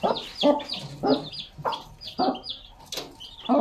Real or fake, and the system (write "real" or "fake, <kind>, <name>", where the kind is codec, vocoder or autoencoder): real